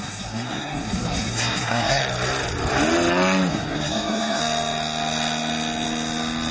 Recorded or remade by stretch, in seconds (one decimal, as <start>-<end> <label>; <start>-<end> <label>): 0.0-2.0 remade; 2.0-3.5 recorded; 3.5-4.4 remade; 4.4-6.5 recorded

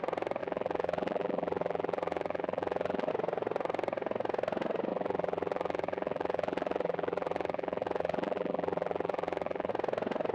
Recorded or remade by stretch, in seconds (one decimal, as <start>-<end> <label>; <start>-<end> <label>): 0.0-0.4 recorded; 0.4-3.1 remade; 3.1-4.9 recorded; 4.9-9.7 remade; 9.7-10.3 recorded

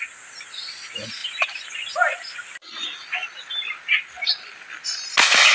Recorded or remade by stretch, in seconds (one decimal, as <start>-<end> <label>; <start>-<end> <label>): 0.0-5.5 recorded

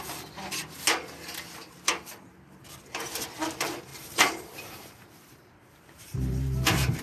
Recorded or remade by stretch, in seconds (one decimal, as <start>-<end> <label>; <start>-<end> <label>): 0.0-3.9 recorded; 3.9-7.0 remade

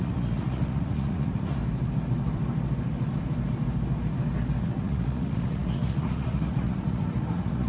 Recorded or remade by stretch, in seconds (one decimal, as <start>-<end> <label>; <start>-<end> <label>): 0.0-1.6 remade; 1.6-4.6 recorded; 4.6-7.7 remade

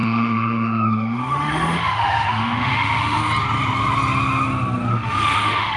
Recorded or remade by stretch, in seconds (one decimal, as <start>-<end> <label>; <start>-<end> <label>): 0.0-3.2 remade; 3.2-4.9 recorded; 4.9-5.8 remade

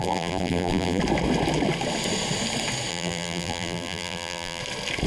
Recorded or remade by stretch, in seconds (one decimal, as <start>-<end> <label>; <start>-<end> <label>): 0.0-1.0 remade; 1.0-2.9 recorded; 2.9-4.6 remade; 4.6-5.1 recorded